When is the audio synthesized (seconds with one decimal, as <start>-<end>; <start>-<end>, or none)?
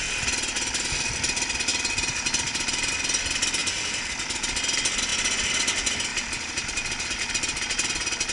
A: 1.7-2.9; 3.6-4.1; 6.1-7.3